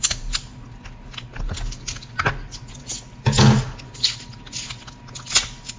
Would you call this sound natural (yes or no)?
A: yes